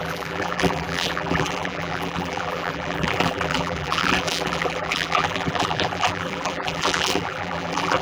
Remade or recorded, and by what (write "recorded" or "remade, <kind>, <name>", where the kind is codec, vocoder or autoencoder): remade, vocoder, BigVGAN v2